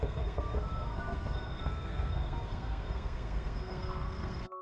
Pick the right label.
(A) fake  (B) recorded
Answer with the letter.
A